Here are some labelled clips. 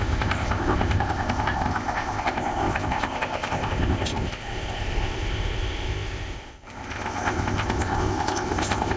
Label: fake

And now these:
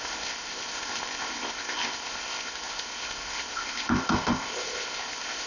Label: fake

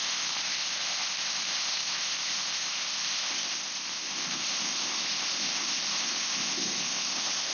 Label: fake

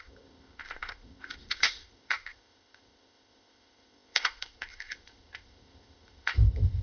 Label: fake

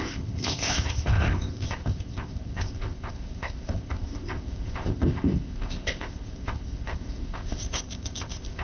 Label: fake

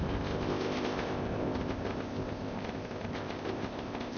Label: fake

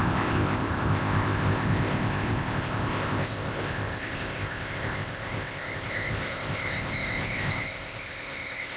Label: fake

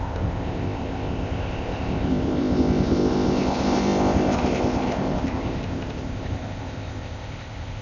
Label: fake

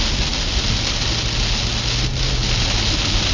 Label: real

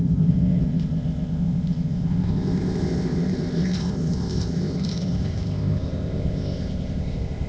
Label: fake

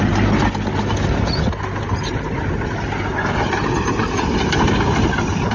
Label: real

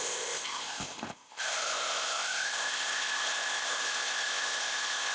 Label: fake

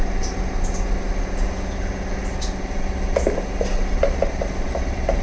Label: real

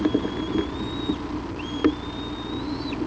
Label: real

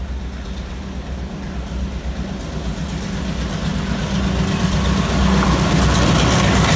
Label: real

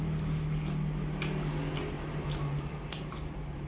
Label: real